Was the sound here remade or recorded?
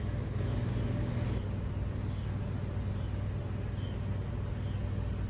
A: recorded